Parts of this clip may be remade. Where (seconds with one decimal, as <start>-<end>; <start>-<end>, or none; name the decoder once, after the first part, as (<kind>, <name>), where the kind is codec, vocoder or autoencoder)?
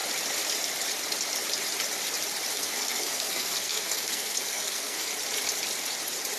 2.5-5.1 (codec, SNAC)